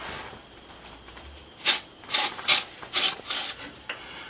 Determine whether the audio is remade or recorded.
recorded